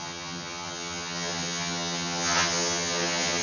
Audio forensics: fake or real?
fake